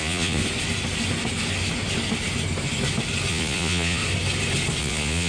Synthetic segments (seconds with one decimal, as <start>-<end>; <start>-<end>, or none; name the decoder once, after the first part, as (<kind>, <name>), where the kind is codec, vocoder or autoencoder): 0.0-0.4 (vocoder, Vocos); 3.3-4.0; 4.8-5.3